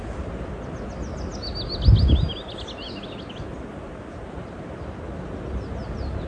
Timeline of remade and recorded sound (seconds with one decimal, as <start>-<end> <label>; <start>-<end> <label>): 0.0-6.3 recorded